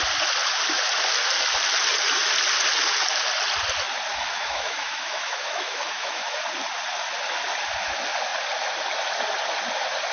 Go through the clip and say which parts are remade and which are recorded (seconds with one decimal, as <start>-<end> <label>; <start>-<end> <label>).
0.0-4.1 recorded; 4.1-6.4 remade; 6.4-10.1 recorded